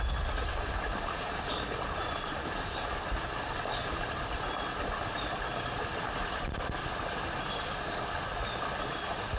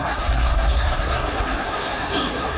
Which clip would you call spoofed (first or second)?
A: second